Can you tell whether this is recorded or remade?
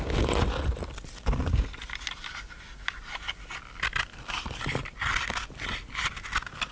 recorded